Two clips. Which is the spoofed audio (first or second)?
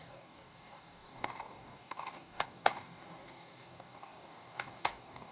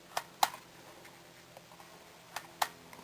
first